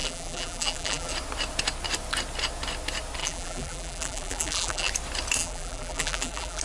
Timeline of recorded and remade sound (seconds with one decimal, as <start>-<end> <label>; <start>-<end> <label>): 0.0-1.1 remade; 1.1-3.2 recorded; 3.2-4.9 remade; 4.9-5.4 recorded; 5.4-6.6 remade